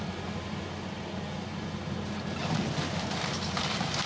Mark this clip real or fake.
real